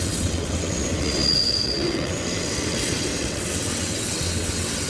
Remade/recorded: remade